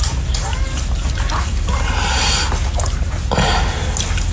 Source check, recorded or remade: recorded